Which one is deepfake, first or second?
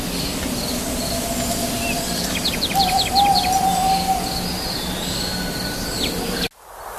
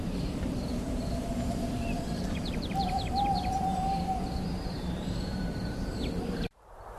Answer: second